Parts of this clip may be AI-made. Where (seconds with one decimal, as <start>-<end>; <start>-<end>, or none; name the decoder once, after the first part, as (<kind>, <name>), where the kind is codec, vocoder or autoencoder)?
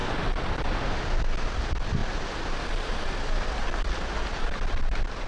none